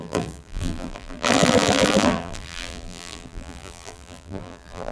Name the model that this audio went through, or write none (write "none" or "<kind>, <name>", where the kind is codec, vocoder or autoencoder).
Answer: vocoder, BigVGAN v2